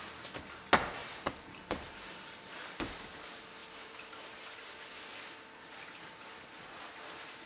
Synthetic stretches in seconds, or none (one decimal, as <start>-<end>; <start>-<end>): 1.0-2.9